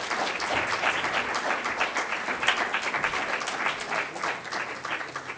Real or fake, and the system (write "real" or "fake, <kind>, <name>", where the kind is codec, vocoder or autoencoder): real